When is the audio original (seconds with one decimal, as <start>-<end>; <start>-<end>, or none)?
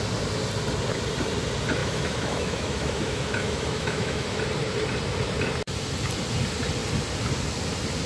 0.0-1.8; 4.4-8.1